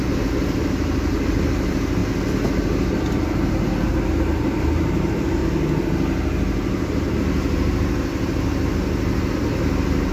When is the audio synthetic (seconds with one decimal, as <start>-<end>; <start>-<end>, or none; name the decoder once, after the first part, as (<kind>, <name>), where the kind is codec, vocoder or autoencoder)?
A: 0.0-2.0 (vocoder, BigVGAN v2); 3.5-5.4